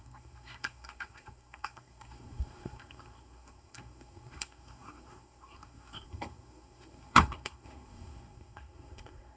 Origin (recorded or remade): remade